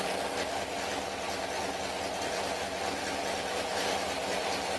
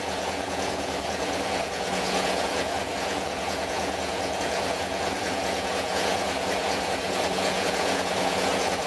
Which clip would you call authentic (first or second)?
first